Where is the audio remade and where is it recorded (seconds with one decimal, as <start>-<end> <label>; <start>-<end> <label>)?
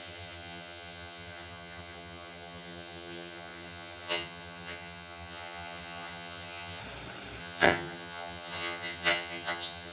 0.0-6.8 remade; 6.8-7.4 recorded; 7.4-9.9 remade